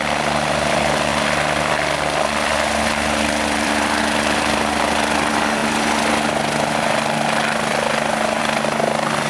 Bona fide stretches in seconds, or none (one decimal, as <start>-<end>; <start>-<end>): 0.0-1.1; 4.0-9.3